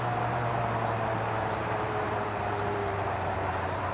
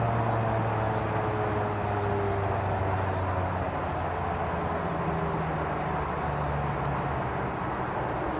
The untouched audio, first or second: second